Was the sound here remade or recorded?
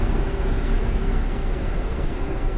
remade